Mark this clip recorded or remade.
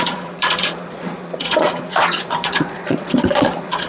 remade